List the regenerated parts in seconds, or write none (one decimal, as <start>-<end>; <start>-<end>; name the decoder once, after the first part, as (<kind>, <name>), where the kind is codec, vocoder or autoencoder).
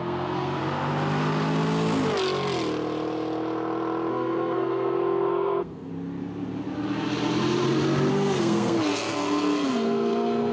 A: 0.0-0.6 (codec, SNAC); 4.1-5.9; 8.1-10.5